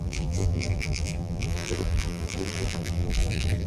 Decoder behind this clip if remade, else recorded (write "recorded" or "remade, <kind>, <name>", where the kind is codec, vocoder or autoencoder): remade, vocoder, BigVGAN v2